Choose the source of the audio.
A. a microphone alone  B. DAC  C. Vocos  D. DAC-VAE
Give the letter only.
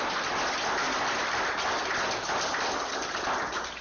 A